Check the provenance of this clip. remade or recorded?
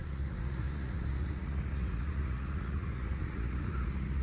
remade